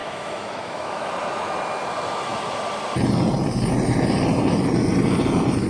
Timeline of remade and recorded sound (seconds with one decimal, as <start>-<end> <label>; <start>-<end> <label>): 0.0-1.1 remade; 1.1-5.7 recorded

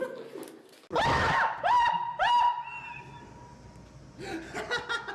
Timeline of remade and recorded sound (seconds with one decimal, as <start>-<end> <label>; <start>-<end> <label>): 0.0-5.1 recorded

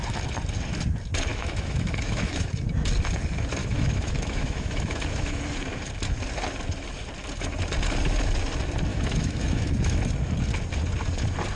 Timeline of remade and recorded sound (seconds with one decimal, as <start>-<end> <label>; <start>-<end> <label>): 0.0-1.3 recorded; 1.3-2.5 remade; 2.5-3.6 recorded; 3.6-5.4 remade; 5.4-8.9 recorded; 8.9-10.0 remade; 10.0-11.6 recorded

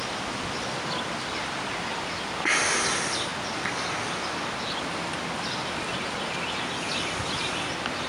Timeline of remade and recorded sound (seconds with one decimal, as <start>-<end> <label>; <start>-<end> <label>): 0.0-8.1 recorded

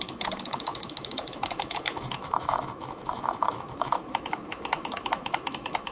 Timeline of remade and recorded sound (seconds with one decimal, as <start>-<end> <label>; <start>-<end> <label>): 0.0-5.9 remade

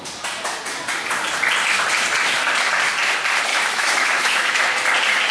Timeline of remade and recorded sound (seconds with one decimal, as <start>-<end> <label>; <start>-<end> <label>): 0.0-3.5 recorded; 3.5-4.6 remade; 4.6-5.3 recorded

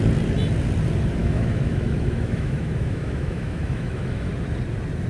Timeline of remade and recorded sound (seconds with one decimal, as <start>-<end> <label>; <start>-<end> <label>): 0.0-1.2 recorded; 1.2-4.3 remade; 4.3-5.1 recorded

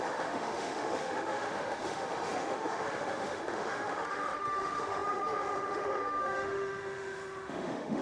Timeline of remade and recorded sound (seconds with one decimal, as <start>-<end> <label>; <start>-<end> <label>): 0.0-8.0 remade